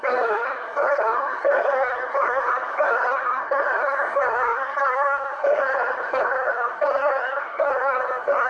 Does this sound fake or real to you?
fake